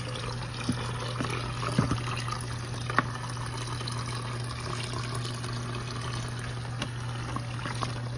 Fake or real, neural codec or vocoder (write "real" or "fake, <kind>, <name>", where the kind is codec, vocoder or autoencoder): real